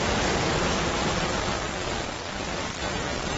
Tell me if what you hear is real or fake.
real